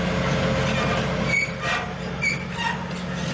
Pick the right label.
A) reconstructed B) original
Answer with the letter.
B